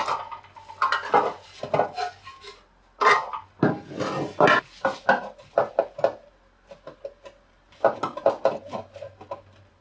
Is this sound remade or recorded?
recorded